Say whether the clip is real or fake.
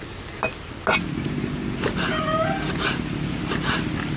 real